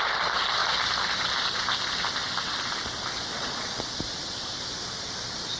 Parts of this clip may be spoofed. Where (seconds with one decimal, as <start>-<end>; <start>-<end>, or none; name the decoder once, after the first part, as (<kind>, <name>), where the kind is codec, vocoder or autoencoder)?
3.3-3.8 (vocoder, Vocos)